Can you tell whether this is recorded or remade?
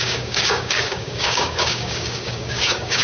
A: remade